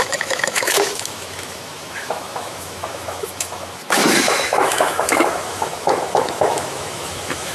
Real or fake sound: fake